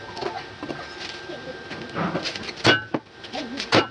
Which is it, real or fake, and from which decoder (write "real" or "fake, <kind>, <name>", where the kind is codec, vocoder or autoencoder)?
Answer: real